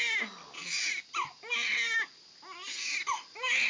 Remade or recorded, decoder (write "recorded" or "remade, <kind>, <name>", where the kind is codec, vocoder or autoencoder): recorded